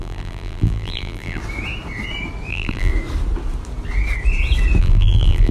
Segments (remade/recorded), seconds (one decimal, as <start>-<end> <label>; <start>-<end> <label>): 0.0-1.4 remade; 1.4-2.5 recorded; 2.5-2.9 remade; 2.9-4.8 recorded; 4.8-5.5 remade